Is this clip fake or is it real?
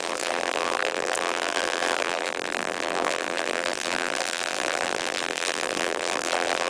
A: fake